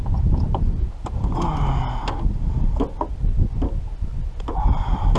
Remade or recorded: recorded